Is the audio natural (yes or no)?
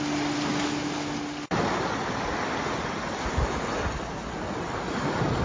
yes